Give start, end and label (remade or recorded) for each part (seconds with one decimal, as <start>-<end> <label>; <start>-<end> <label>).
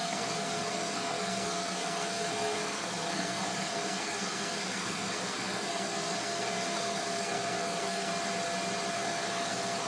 0.0-8.1 remade; 8.1-8.9 recorded; 8.9-9.9 remade